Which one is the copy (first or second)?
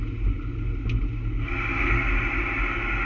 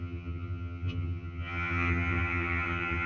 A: second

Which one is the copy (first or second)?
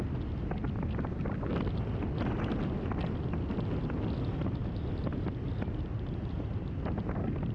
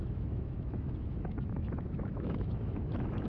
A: second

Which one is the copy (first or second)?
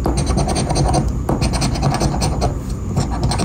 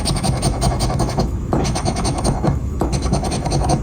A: second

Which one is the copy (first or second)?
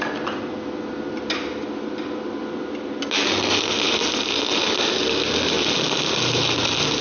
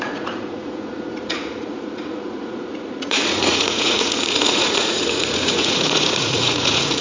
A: second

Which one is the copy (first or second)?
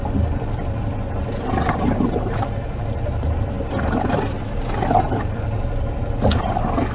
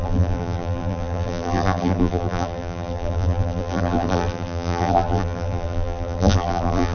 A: second